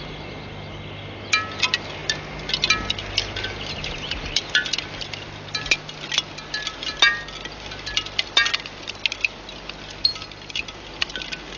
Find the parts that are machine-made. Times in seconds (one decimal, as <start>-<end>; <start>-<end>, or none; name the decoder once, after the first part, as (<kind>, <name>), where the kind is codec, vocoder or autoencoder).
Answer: none